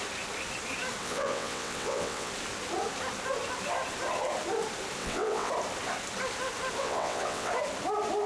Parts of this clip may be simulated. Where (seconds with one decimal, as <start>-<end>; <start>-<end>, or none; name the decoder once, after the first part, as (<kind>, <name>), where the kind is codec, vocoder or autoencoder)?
1.0-2.3 (vocoder, WaveNeXt); 5.0-5.5; 6.8-7.5